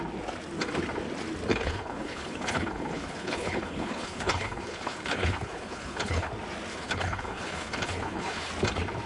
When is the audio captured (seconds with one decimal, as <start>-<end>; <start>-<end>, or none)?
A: 0.0-1.5; 6.3-6.7; 8.5-9.1